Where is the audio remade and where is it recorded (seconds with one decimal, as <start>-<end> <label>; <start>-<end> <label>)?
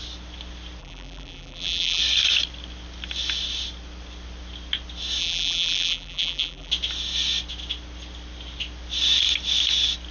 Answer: 0.0-0.8 recorded; 0.8-2.0 remade; 2.0-5.2 recorded; 5.2-6.7 remade; 6.7-10.1 recorded